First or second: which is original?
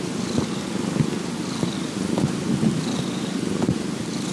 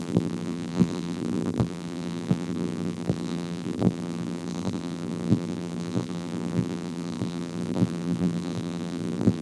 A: first